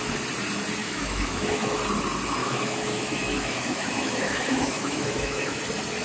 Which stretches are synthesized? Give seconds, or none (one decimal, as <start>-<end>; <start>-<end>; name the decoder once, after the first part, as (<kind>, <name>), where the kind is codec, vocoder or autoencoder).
0.8-1.8 (autoencoder, DAC-VAE); 2.4-5.6